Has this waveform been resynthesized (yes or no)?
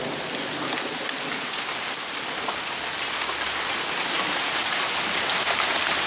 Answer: no